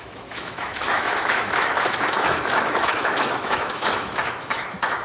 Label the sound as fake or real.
fake